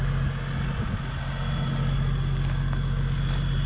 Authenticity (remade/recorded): recorded